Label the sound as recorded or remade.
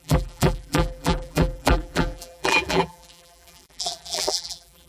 remade